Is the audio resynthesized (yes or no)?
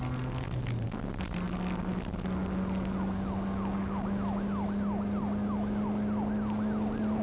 no